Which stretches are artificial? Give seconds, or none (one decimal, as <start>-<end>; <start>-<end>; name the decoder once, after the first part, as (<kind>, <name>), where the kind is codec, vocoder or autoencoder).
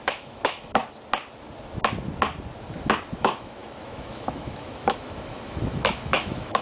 0.0-0.8 (autoencoder, DAC-VAE); 3.2-6.6